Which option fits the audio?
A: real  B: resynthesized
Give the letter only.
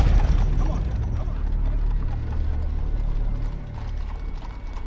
A